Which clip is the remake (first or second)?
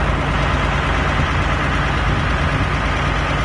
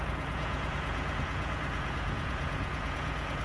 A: second